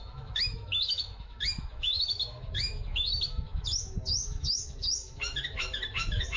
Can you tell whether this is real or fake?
fake